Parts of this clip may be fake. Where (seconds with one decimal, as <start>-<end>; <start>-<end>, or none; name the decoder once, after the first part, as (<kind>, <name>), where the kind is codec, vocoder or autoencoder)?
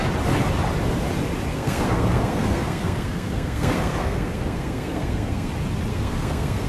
1.5-5.5 (codec, SNAC); 5.9-6.7